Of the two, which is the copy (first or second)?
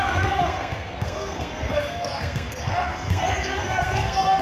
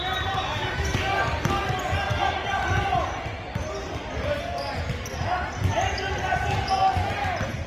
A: first